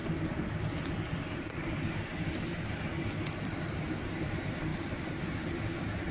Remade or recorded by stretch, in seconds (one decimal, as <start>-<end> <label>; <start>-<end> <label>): 0.0-6.1 recorded

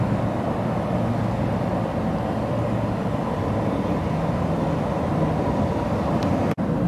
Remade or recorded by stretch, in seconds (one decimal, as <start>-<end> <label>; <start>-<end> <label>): 0.0-1.7 recorded; 1.7-5.8 remade; 5.8-6.9 recorded

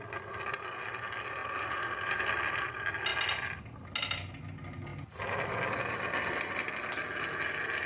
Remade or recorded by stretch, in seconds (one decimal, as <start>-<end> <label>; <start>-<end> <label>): 0.0-1.4 recorded; 1.4-2.7 remade; 2.7-4.9 recorded; 4.9-6.7 remade; 6.7-7.9 recorded

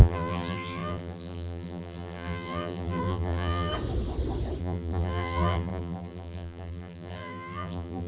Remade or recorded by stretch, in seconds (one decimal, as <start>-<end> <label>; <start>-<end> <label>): 0.0-3.7 remade; 3.7-4.6 recorded; 4.6-8.1 remade

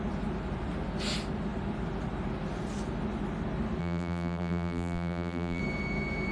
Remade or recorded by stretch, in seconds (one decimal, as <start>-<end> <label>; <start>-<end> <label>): 0.0-3.8 recorded; 3.8-5.6 remade; 5.6-6.3 recorded

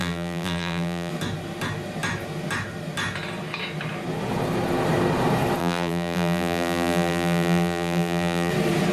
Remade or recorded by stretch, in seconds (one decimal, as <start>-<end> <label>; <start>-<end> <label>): 0.0-1.1 remade; 1.1-5.6 recorded; 5.6-8.5 remade; 8.5-8.9 recorded

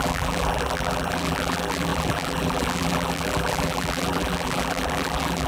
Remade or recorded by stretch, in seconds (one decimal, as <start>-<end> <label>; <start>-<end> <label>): 0.0-5.5 remade

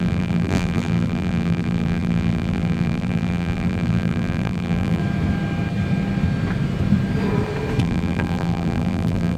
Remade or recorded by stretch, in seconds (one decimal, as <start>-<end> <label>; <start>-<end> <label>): 0.0-5.0 remade; 5.0-7.8 recorded; 7.8-9.4 remade